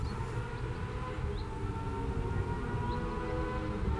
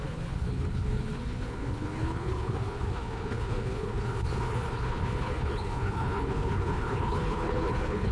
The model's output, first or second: second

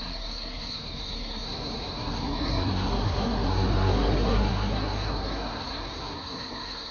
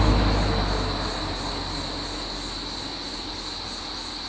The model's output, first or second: first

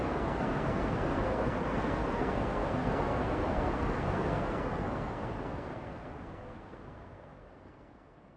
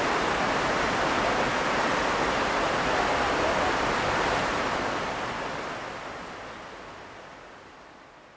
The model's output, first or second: first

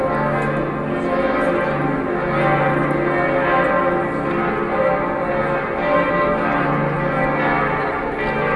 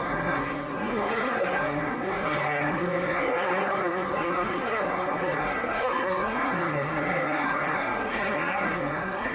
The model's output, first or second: second